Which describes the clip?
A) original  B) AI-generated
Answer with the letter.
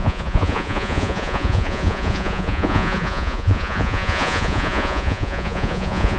B